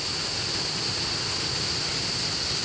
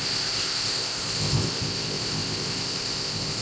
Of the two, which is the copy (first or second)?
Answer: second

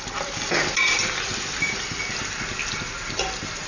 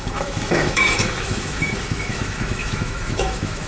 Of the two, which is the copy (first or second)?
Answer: second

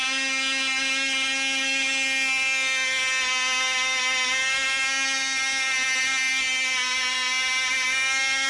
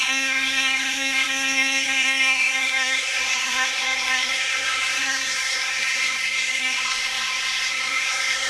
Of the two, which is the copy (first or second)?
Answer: second